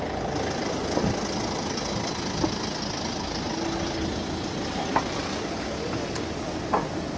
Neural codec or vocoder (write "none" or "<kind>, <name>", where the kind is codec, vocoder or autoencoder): none